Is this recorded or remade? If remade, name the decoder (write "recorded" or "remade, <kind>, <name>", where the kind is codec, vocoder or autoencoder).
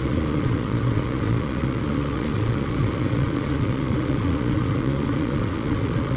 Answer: remade, vocoder, Vocos